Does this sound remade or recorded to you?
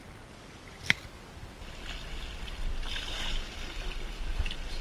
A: recorded